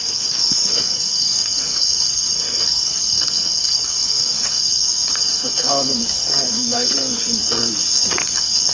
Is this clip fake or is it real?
fake